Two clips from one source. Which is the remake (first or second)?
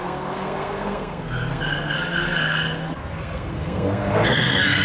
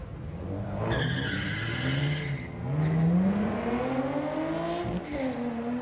first